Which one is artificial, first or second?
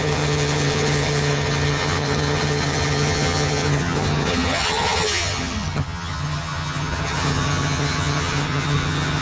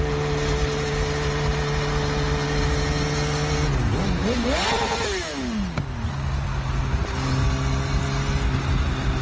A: first